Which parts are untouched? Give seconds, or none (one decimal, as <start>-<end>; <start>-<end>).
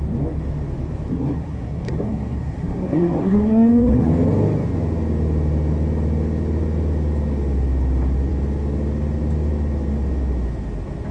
0.0-1.1; 4.1-11.1